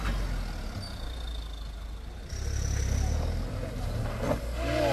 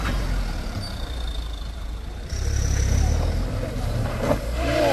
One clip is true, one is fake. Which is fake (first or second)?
second